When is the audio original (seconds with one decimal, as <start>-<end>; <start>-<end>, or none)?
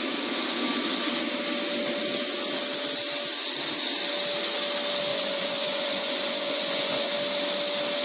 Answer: 0.0-5.1; 7.1-8.0